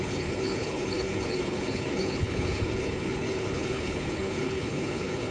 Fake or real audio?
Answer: fake